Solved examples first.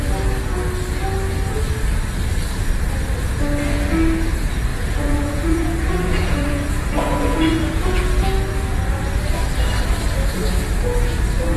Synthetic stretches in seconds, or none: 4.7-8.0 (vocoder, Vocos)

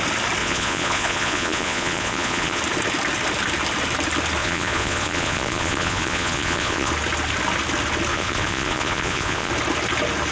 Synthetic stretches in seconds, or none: 0.4-2.6 (vocoder, Vocos); 4.4-6.9; 8.1-9.5

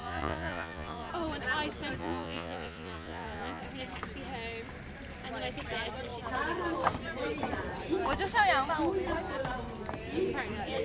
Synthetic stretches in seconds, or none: 0.0-1.1 (vocoder, Vocos); 2.0-3.6

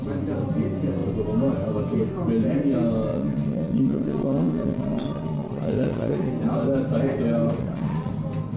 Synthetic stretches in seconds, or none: 3.1-6.3 (vocoder, Vocos); 7.6-8.1

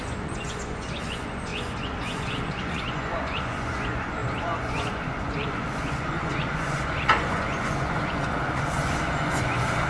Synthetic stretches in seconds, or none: 0.0-9.9 (vocoder, Vocos)

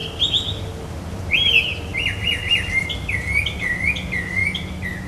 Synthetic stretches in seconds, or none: none

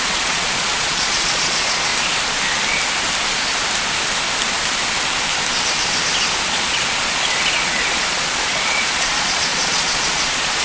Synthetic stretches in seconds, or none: 0.0-1.9 (vocoder, Vocos); 6.5-10.6